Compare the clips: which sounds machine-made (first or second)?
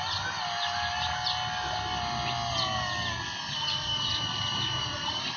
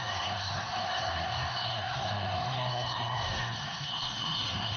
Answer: second